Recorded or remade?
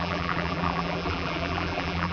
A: remade